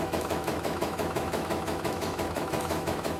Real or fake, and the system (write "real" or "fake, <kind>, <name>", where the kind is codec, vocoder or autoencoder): fake, autoencoder, DAC-VAE